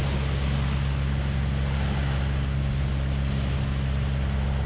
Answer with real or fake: real